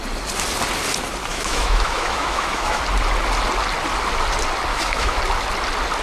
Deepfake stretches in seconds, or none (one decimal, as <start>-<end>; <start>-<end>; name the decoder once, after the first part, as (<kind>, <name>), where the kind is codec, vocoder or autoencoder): 1.3-2.8 (autoencoder, DAC-VAE); 4.7-5.2

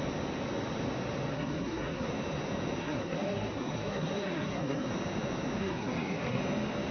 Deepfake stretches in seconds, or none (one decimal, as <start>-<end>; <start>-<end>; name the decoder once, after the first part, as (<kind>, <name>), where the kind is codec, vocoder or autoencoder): 1.3-2.1 (codec, SNAC); 2.8-4.9; 5.6-6.4

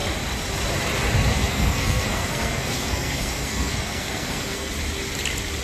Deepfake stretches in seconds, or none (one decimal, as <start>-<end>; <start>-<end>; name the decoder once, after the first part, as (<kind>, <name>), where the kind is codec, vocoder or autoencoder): 1.3-4.7 (codec, SNAC)

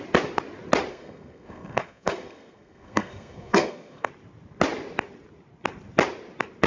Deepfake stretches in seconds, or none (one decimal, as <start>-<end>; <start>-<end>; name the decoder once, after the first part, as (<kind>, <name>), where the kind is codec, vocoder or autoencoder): 0.9-4.1 (codec, SNAC)

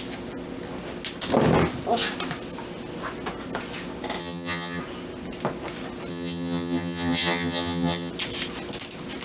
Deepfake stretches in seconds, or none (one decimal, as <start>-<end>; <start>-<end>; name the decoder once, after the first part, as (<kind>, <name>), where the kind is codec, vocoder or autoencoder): 4.2-4.8 (vocoder, HiFi-GAN); 6.1-8.1

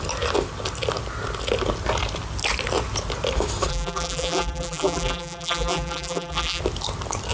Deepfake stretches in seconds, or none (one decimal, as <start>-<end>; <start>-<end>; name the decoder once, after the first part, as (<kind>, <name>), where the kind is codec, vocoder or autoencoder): 3.7-6.6 (vocoder, BigVGAN v2)